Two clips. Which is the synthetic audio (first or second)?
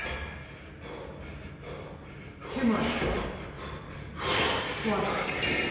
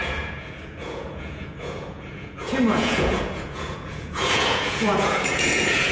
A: second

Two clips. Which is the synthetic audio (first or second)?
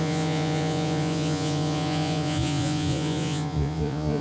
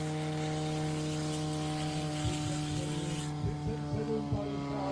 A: first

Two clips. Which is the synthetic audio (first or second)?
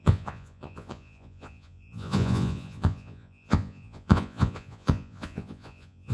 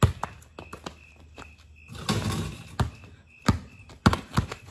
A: first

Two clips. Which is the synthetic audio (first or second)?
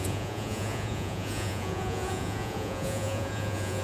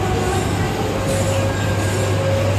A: first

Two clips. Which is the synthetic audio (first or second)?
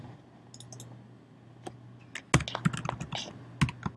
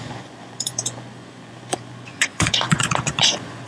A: second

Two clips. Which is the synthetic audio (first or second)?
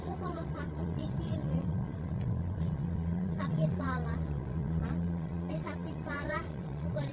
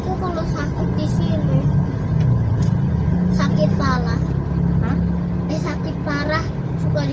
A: first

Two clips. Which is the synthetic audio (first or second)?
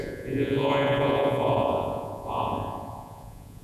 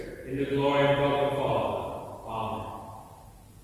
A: first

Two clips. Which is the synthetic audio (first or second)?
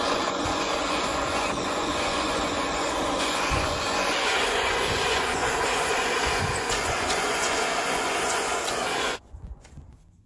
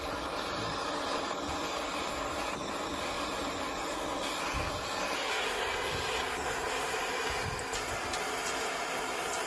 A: first